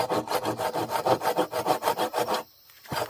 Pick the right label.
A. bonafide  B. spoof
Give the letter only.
A